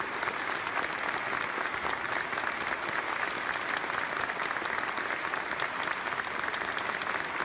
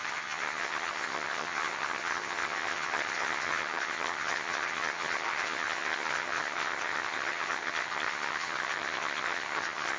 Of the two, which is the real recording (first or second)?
first